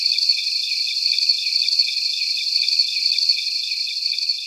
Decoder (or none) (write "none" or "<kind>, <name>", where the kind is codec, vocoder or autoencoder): none